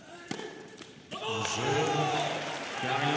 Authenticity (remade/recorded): remade